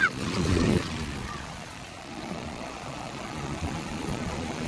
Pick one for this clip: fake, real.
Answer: fake